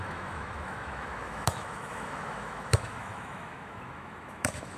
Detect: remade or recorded remade